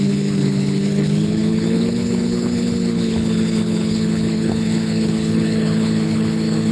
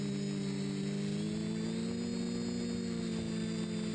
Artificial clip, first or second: first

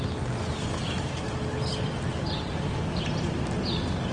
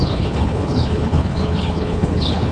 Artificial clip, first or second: second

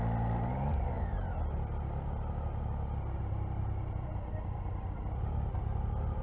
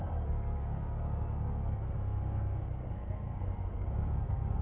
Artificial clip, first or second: second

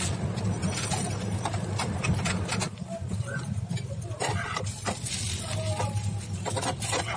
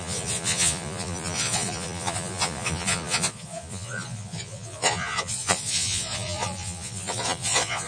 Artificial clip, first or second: second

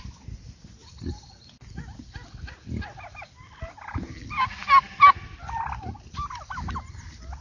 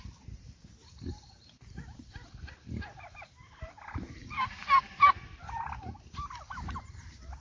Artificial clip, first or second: second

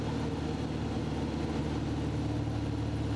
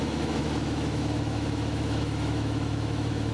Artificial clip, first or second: second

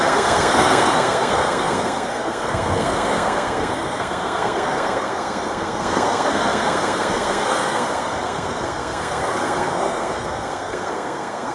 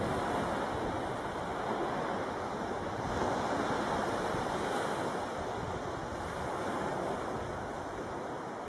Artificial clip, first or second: first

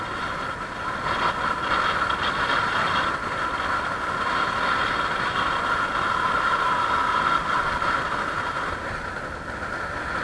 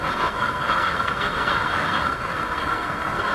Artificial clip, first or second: second